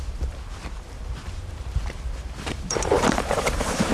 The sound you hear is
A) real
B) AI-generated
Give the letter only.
B